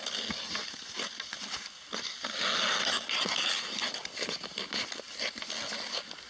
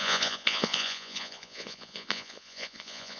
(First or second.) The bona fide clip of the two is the first